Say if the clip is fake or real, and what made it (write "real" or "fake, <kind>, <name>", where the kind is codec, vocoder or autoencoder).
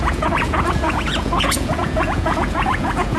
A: fake, vocoder, Vocos